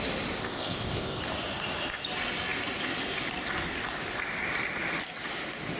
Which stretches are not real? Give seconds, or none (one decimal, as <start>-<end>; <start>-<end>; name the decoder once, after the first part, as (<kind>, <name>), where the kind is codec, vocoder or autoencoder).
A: 0.4-1.2 (codec, ZipCodec)

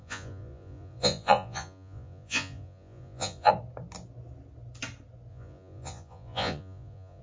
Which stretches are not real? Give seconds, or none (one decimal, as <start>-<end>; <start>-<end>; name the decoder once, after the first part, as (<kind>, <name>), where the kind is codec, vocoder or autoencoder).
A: 0.0-3.5 (vocoder, Vocos); 5.3-7.2

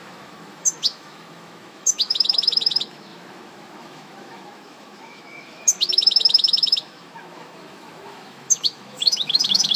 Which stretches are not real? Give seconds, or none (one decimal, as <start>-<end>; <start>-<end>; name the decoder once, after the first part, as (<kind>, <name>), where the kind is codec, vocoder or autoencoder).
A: 0.0-9.8 (autoencoder, DAC-VAE)

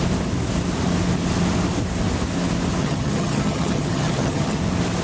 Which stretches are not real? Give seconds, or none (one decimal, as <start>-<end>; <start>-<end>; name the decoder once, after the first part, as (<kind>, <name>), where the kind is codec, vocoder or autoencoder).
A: 2.8-4.6 (vocoder, HiFi-GAN)

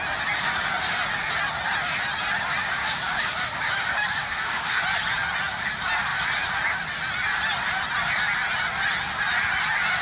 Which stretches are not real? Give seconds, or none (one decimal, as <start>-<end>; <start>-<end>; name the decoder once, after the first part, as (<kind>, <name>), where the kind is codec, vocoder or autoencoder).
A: 2.8-4.8 (codec, DAC)

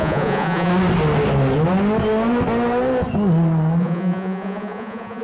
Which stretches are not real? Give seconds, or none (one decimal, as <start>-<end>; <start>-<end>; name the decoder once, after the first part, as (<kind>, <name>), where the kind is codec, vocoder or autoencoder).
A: 0.0-0.7 (vocoder, Vocos); 3.8-5.2

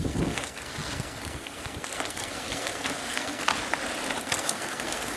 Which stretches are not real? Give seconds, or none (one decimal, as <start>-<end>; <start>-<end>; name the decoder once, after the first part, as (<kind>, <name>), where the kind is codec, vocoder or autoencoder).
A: 0.0-3.5 (codec, SNAC); 4.2-5.2

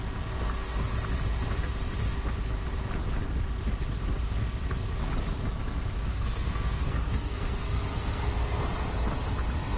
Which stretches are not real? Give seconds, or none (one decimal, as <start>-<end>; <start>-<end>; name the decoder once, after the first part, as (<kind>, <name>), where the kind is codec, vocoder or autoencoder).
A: 6.0-8.3 (codec, SNAC)